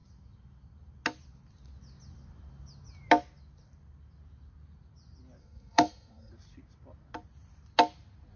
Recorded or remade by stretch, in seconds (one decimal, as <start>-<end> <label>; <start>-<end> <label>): 0.0-5.4 recorded; 5.4-6.3 remade; 6.3-8.4 recorded